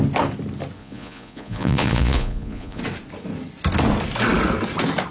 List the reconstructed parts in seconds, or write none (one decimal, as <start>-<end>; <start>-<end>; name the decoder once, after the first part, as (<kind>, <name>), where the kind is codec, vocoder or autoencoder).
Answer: 0.8-2.8 (vocoder, Vocos)